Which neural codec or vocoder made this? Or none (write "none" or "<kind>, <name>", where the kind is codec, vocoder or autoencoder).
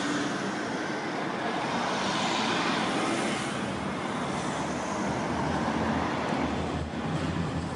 none